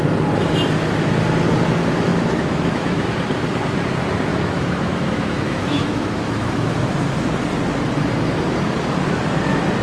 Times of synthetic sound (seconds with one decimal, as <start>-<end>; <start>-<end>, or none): 2.1-3.1; 4.3-6.7